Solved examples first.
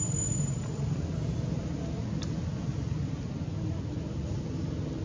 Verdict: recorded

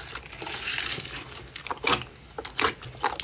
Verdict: recorded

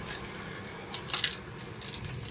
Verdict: recorded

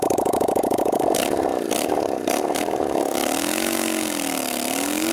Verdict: remade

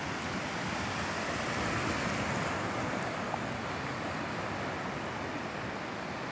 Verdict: recorded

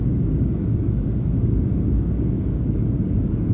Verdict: remade